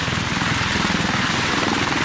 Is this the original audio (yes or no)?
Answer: yes